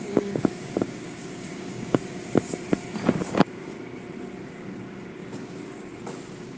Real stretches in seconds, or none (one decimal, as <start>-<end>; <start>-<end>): 2.0-3.3; 3.7-4.5